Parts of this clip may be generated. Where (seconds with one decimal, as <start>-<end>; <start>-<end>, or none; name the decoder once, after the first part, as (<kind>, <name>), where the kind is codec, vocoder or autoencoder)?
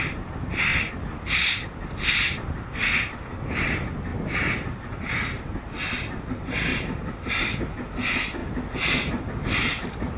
4.1-5.4 (vocoder, BigVGAN v2); 6.7-7.3